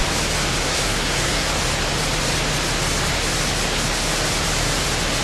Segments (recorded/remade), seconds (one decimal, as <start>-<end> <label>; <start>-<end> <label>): 0.0-0.6 recorded; 0.6-1.5 remade; 1.5-5.2 recorded